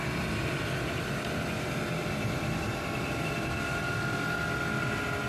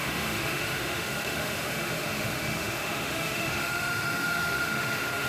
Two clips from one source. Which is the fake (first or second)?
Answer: second